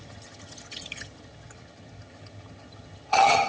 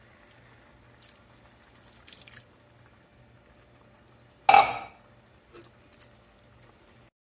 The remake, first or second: first